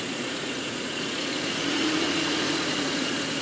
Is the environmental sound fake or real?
fake